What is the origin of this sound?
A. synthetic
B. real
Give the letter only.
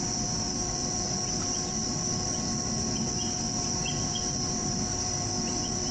A